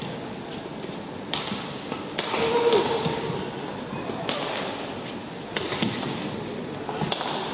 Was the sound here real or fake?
real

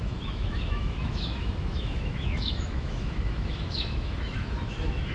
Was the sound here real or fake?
fake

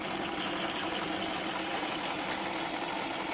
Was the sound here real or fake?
real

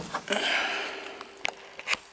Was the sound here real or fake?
real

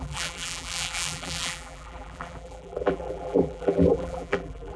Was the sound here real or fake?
fake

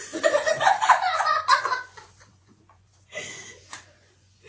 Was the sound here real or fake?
fake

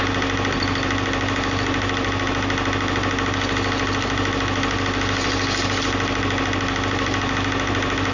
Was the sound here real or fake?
real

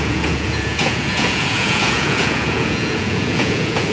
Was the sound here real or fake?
fake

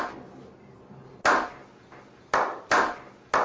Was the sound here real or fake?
real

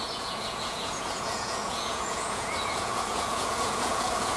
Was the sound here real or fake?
fake